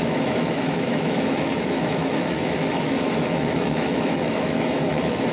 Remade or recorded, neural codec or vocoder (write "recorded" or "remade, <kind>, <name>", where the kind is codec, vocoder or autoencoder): remade, autoencoder, DAC-VAE